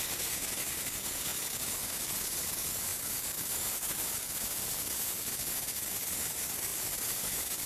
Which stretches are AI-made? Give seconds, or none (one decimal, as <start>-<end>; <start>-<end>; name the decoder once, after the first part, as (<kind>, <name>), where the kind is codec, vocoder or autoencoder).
0.0-7.7 (codec, DAC)